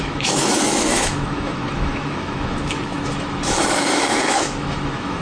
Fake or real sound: fake